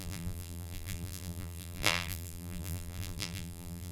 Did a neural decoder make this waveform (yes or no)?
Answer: yes